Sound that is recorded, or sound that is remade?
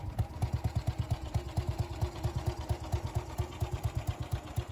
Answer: recorded